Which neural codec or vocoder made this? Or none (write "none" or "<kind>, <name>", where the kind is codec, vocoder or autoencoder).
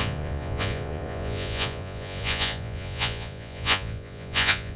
vocoder, Vocos